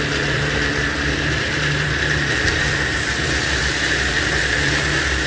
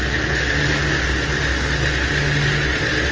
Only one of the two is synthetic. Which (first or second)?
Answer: first